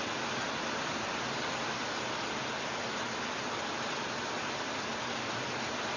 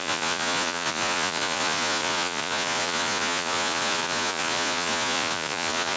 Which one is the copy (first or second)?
second